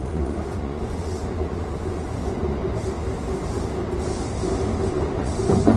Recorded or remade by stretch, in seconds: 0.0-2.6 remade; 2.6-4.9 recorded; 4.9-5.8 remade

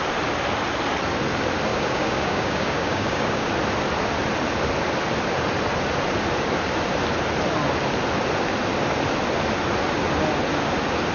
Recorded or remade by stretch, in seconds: 0.0-1.7 recorded; 1.7-3.5 remade; 3.5-11.1 recorded

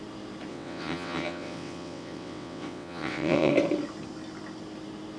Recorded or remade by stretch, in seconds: 0.0-0.5 recorded; 0.5-3.5 remade; 3.5-5.2 recorded